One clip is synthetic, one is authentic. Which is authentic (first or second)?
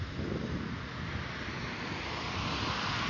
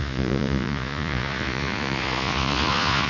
first